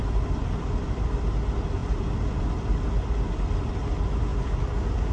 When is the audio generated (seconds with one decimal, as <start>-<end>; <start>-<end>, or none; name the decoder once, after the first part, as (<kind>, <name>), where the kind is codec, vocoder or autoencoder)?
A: none